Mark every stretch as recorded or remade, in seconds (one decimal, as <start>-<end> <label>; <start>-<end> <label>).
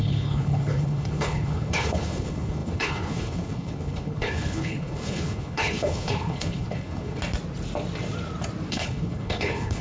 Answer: 0.0-7.2 remade; 7.2-8.7 recorded; 8.7-9.8 remade